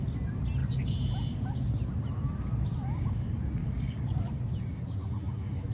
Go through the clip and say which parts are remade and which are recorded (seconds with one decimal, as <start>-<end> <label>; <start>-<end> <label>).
0.0-3.6 recorded; 3.6-4.3 remade; 4.3-5.7 recorded